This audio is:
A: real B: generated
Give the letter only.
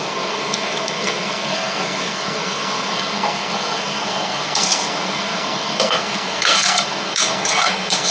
B